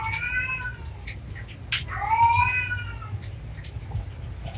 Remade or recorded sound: recorded